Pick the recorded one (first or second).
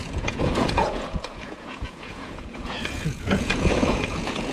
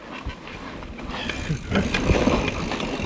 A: second